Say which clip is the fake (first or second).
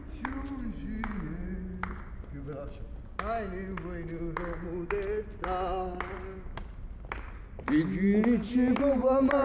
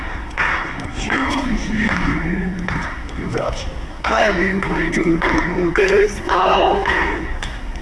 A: second